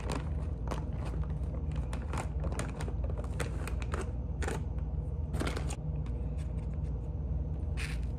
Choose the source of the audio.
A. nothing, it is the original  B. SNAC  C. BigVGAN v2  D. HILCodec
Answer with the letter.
A